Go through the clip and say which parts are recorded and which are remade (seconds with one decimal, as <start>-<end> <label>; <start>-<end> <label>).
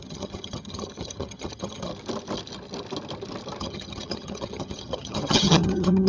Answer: 0.0-1.9 remade; 1.9-3.6 recorded; 3.6-6.1 remade